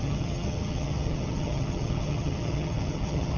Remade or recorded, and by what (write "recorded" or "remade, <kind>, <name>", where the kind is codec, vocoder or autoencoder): remade, vocoder, HiFi-GAN